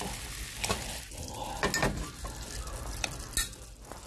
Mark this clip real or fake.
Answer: real